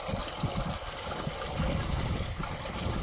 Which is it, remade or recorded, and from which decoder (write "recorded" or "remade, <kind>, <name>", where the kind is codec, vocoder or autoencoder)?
recorded